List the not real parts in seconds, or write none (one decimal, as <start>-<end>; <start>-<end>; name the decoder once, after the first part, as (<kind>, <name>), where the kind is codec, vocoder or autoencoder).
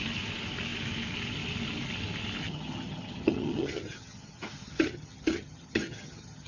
2.4-6.5 (vocoder, HiFi-GAN)